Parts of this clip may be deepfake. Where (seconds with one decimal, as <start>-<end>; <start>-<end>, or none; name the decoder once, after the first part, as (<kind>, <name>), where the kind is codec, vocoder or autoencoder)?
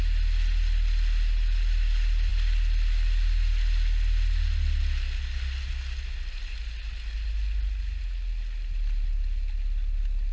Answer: none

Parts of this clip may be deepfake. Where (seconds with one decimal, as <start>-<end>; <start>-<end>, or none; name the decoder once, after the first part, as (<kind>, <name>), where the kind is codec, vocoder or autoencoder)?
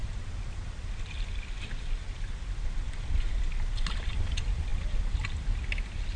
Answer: 0.0-6.2 (vocoder, BigVGAN v2)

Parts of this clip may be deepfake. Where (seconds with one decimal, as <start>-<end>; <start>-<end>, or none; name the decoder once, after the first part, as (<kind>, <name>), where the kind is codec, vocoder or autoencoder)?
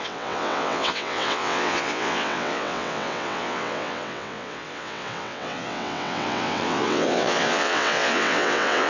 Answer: 0.0-8.9 (vocoder, WaveNeXt)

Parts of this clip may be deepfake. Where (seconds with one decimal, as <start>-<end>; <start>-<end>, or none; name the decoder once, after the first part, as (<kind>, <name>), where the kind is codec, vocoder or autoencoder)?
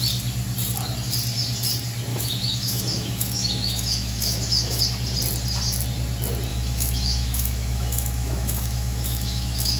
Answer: 2.1-4.8 (autoencoder, DAC-VAE); 6.5-9.8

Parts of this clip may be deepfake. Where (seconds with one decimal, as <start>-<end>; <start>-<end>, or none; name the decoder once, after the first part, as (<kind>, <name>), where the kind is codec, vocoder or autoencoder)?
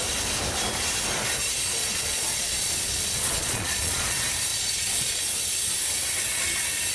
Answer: 1.8-4.1 (vocoder, Vocos); 4.5-5.2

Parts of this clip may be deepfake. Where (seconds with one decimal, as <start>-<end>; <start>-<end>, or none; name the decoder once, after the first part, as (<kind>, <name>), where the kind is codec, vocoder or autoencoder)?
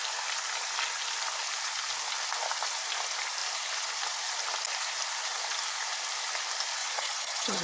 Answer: 6.8-7.6 (vocoder, HiFi-GAN)